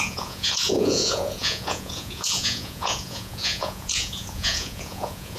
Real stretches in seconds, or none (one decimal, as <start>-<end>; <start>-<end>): none